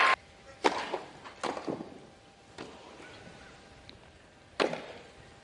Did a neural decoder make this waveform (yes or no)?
no